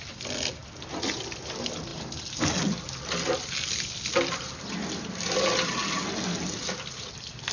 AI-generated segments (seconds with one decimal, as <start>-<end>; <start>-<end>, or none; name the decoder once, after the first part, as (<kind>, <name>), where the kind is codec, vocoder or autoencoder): none